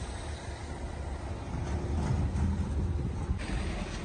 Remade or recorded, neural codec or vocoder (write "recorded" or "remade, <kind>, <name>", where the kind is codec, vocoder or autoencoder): recorded